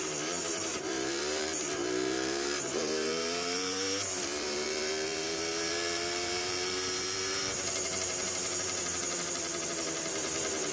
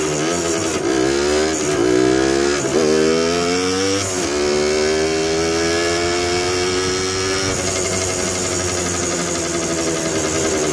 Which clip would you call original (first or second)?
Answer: second